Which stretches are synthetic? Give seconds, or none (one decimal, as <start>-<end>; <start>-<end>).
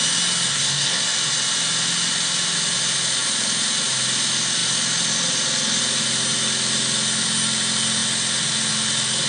0.5-1.0